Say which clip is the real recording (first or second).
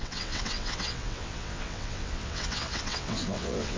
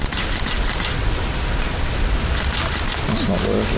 second